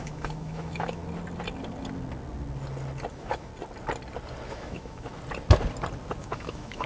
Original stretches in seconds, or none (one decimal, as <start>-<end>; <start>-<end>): 1.0-3.1; 3.5-4.5; 5.1-6.2